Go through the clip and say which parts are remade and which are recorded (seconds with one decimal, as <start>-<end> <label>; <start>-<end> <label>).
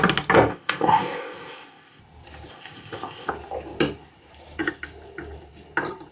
0.0-0.5 recorded; 0.5-2.0 remade; 2.0-2.5 recorded; 2.5-3.3 remade; 3.3-6.1 recorded